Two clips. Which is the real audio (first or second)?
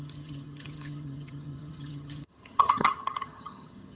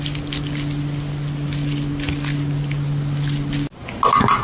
second